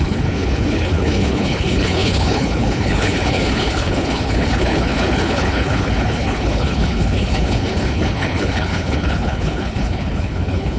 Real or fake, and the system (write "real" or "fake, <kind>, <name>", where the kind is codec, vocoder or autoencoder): fake, codec, HILCodec